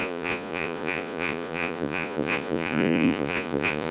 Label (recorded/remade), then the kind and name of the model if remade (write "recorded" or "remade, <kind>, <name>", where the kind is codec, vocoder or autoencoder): remade, vocoder, Vocos